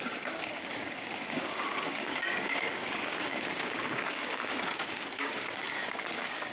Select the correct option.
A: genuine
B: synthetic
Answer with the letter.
B